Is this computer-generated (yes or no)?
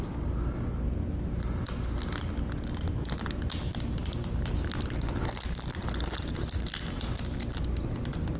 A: no